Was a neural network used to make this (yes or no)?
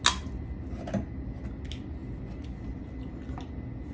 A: no